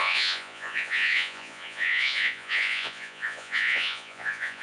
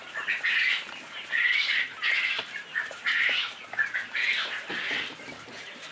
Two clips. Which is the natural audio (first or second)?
second